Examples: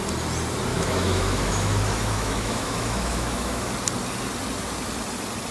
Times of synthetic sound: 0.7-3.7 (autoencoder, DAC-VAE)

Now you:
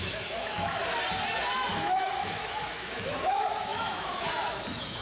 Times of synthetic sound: 0.0-0.8 (autoencoder, DAC-VAE); 1.7-5.0

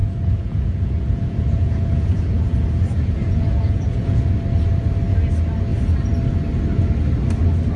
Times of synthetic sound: 0.0-4.3 (vocoder, Vocos)